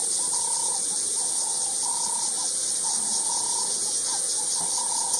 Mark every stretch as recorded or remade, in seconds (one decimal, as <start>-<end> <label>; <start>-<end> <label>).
0.0-3.1 recorded; 3.1-4.3 remade; 4.3-5.2 recorded